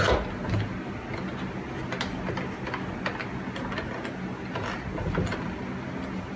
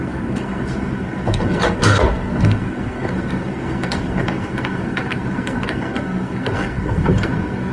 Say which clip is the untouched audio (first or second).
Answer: first